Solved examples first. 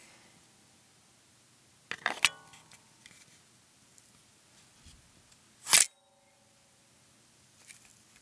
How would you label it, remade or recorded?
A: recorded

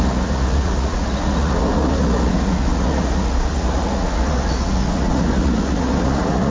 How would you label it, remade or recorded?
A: remade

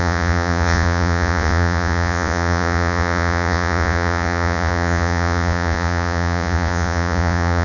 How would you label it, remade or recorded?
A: remade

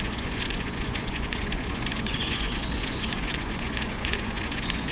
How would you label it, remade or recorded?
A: remade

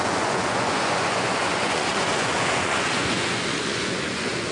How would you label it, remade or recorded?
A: remade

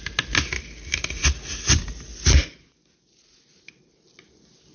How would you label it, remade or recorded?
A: recorded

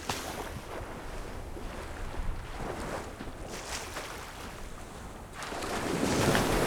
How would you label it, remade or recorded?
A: recorded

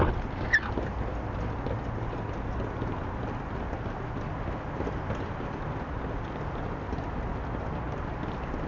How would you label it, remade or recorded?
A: recorded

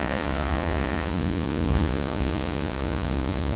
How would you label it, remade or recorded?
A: remade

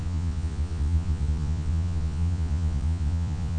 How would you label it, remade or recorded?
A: remade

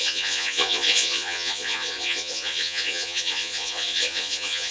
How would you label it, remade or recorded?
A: remade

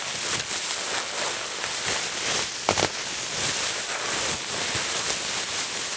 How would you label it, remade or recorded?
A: recorded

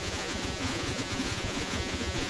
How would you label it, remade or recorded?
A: remade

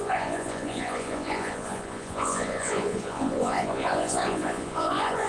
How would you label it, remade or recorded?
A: remade